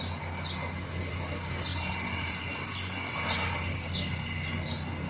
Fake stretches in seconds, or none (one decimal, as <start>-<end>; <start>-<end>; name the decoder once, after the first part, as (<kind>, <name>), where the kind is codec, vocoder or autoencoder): none